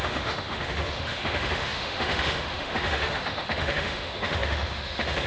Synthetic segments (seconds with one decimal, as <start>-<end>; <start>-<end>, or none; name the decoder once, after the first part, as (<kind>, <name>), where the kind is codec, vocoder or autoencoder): 0.0-5.3 (autoencoder, DAC-VAE)